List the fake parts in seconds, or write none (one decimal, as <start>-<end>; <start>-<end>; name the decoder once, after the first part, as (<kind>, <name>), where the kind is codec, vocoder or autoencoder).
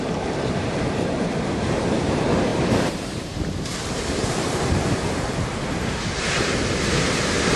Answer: 0.0-7.6 (vocoder, BigVGAN v2)